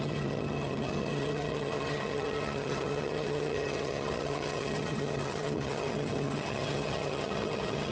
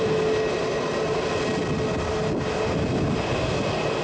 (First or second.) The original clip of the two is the second